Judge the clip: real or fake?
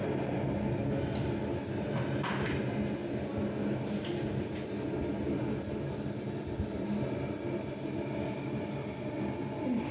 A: real